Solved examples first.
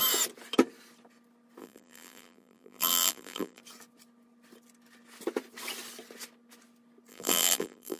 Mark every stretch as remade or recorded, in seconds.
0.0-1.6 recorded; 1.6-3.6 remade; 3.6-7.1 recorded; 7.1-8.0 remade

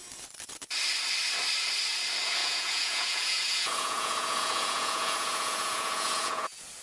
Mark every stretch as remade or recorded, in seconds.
0.0-2.4 recorded; 2.4-6.8 remade